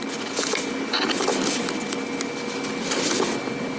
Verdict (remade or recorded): recorded